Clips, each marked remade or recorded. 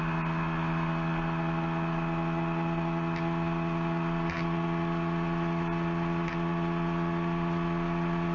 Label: recorded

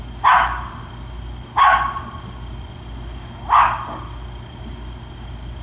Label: recorded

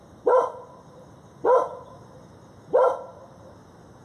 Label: recorded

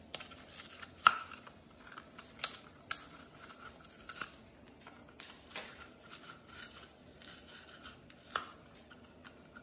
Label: recorded